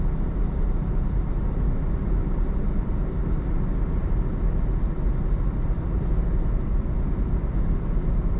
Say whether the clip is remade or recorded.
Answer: recorded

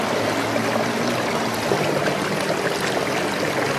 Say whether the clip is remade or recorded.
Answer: recorded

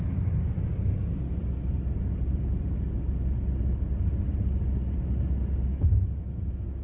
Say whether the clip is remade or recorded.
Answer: recorded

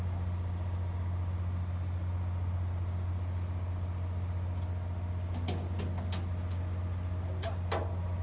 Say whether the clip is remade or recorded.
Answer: recorded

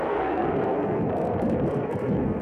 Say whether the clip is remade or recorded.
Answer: remade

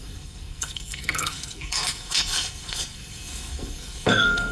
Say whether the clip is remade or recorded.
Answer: remade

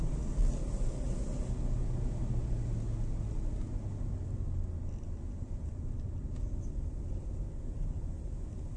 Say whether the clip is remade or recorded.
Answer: recorded